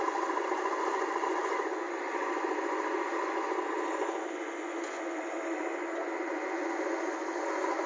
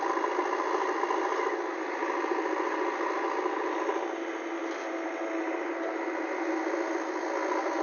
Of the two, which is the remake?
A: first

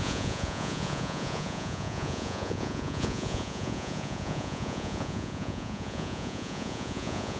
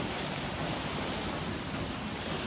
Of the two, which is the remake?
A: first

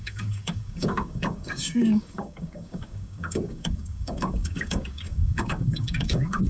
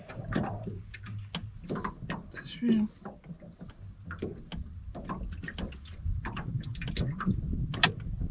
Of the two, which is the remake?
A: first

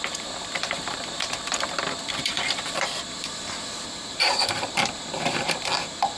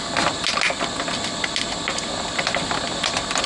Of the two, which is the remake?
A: first